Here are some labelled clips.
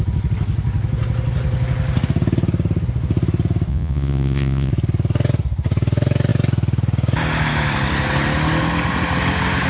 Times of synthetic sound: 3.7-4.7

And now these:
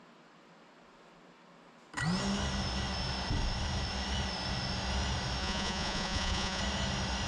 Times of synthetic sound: 5.4-6.6

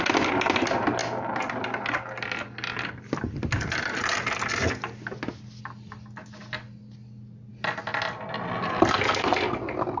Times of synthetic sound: none

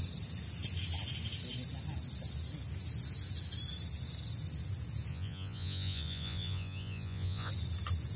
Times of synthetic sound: 5.1-7.5

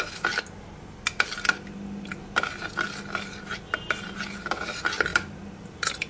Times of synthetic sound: none

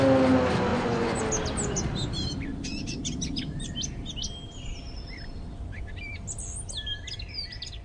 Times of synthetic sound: 0.7-1.2

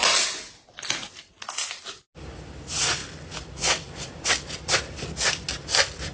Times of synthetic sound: none